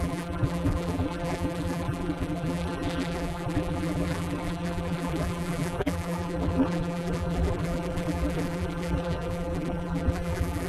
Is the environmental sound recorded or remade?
remade